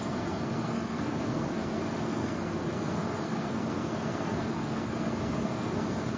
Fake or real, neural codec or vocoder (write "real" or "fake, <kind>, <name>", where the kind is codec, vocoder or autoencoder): fake, codec, SNAC